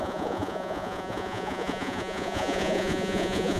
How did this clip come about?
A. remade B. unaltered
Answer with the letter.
A